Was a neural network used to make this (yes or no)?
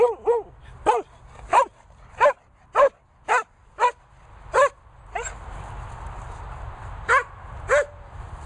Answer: no